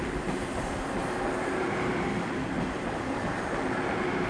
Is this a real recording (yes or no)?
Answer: no